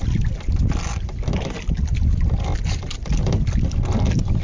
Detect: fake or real real